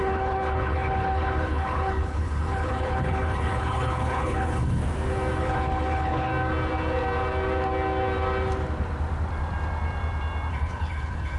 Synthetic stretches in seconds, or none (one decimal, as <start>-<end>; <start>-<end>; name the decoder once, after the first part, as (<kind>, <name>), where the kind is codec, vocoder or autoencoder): 0.0-4.8 (codec, HILCodec); 5.4-6.3; 10.5-11.4